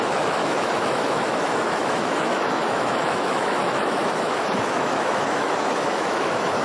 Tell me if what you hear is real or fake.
fake